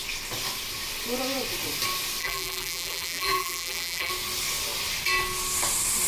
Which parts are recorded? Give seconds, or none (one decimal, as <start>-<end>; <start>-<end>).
0.0-2.2; 4.1-6.1